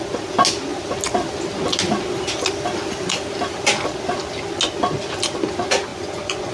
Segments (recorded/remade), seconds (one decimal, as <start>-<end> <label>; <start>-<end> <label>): 0.0-5.9 recorded; 5.9-6.5 remade